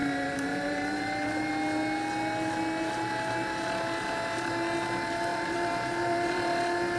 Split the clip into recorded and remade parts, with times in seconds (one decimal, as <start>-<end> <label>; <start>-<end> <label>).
0.0-1.5 remade; 1.5-5.3 recorded; 5.3-6.6 remade; 6.6-7.0 recorded